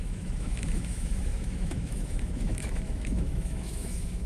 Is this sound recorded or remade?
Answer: remade